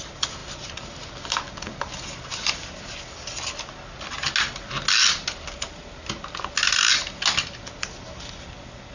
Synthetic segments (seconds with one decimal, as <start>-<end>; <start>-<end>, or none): none